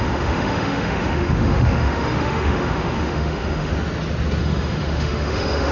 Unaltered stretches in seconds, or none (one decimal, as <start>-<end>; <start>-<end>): 3.7-4.4

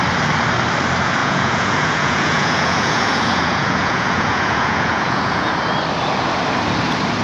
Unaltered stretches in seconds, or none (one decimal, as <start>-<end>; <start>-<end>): 0.0-1.2; 5.5-7.2

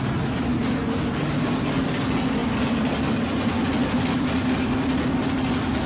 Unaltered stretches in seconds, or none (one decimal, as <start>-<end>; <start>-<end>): 0.0-5.9

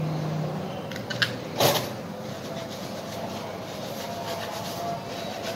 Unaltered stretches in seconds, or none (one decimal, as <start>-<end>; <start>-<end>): 0.0-5.6

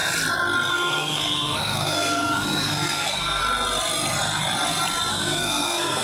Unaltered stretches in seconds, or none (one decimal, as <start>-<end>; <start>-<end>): 0.0-0.7; 3.4-5.1

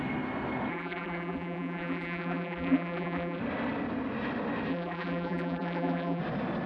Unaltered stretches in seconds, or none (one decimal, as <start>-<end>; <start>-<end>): 0.0-0.7; 3.4-4.7; 6.2-6.7

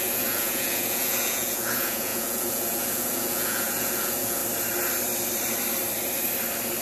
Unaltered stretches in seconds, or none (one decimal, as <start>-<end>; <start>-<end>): 4.4-6.8

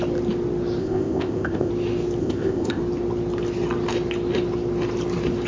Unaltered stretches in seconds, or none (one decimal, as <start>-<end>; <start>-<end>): 0.0-0.8; 1.7-2.2; 2.8-5.5